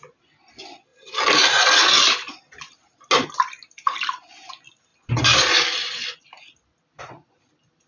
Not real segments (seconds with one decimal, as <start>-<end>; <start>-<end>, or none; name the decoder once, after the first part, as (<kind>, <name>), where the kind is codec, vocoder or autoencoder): none